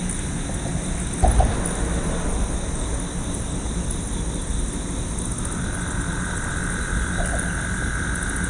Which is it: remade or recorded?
recorded